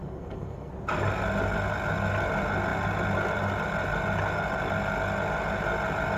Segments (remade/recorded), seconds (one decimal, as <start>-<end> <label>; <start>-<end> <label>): 0.0-0.7 remade; 0.7-6.2 recorded